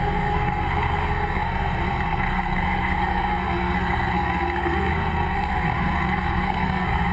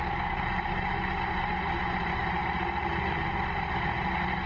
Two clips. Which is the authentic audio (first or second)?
second